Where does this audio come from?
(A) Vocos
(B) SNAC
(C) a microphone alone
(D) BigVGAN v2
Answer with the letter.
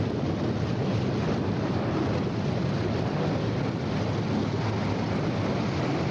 C